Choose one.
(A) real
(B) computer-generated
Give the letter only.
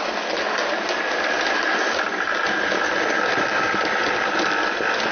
A